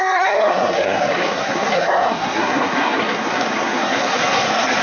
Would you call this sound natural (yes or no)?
no